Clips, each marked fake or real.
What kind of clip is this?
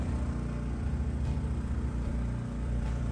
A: fake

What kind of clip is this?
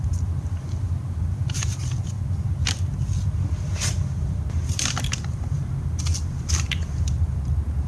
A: real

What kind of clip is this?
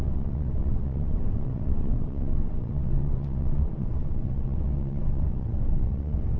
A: fake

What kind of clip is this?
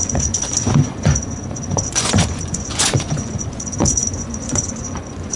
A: fake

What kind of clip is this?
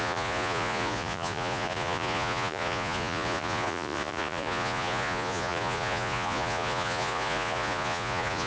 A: fake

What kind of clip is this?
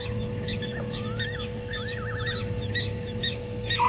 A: fake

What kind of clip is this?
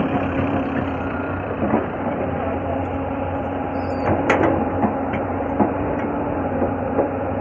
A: fake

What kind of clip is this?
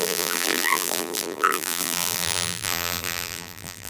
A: fake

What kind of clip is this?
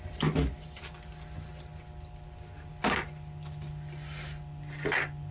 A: real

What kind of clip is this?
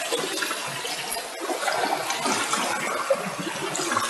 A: real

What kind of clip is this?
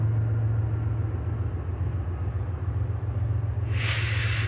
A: real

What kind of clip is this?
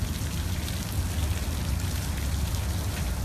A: fake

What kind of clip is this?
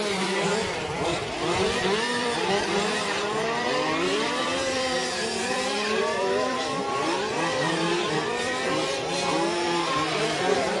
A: fake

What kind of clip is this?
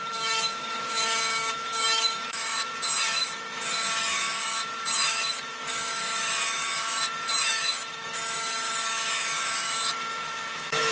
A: fake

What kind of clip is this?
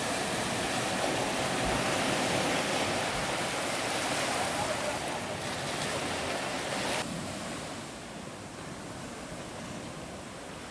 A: real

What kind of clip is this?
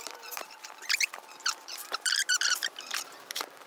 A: fake